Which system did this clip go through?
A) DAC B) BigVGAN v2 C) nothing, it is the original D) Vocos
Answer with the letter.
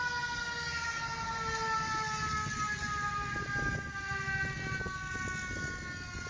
C